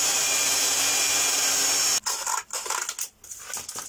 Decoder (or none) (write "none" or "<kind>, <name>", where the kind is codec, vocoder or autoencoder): none